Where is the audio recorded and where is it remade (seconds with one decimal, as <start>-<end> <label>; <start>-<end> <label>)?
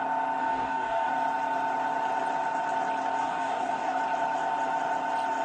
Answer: 0.0-0.4 recorded; 0.4-1.1 remade; 1.1-3.2 recorded; 3.2-4.0 remade; 4.0-5.4 recorded